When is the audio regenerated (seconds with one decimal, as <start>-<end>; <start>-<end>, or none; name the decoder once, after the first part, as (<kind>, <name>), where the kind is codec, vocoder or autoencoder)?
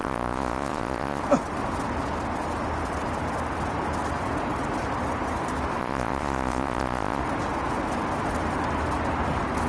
0.0-1.2 (vocoder, Vocos); 5.8-7.2